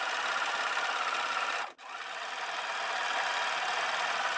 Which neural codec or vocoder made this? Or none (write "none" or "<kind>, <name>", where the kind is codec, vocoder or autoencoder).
none